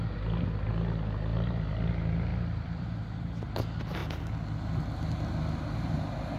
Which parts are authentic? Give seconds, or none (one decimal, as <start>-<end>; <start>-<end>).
0.0-1.3; 1.9-2.3; 3.5-6.4